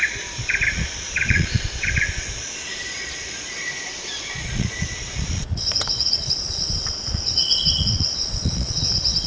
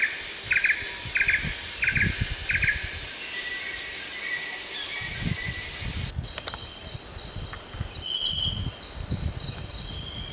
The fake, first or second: first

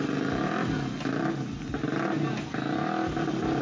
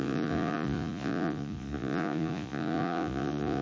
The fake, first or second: second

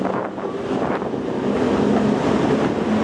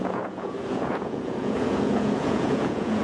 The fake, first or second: second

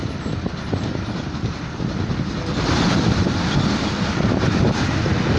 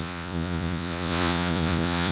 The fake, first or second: second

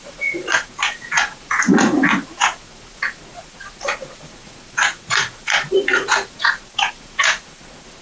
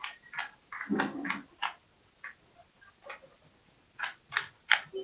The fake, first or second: first